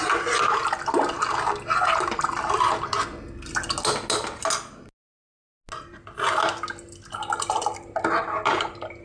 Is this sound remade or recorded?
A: recorded